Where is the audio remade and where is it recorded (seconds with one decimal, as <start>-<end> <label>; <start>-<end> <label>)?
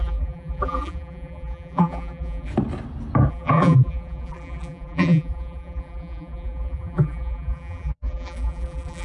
0.0-2.5 remade; 2.5-3.3 recorded; 3.3-9.0 remade